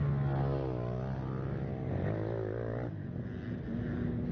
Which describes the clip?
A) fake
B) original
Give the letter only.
B